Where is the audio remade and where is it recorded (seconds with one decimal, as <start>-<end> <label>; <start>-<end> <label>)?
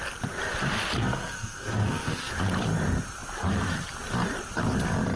0.0-1.0 recorded; 1.0-2.3 remade; 2.3-5.2 recorded